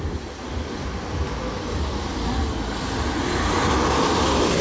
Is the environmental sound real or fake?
real